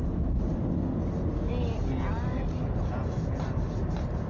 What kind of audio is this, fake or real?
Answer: real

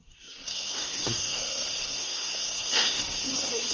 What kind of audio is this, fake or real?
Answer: fake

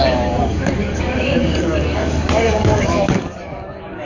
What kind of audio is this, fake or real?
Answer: fake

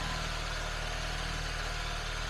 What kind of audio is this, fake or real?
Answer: real